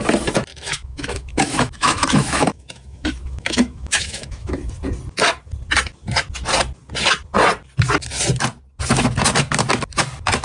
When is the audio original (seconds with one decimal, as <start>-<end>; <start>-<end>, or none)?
0.0-0.5; 4.7-10.4